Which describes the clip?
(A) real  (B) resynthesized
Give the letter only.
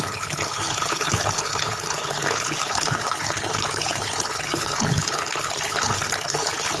B